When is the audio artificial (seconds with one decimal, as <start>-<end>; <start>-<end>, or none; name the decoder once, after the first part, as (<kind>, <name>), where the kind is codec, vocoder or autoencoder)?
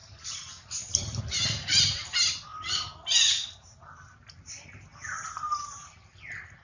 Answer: none